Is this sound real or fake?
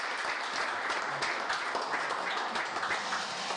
real